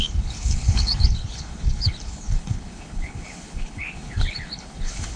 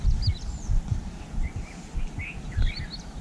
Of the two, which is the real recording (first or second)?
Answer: second